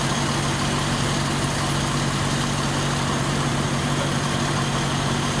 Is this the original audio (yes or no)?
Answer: yes